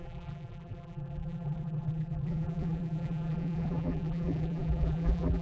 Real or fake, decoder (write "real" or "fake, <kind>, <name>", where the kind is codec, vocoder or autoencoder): fake, vocoder, BigVGAN v2